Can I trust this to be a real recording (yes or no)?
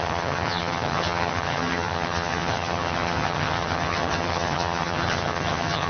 no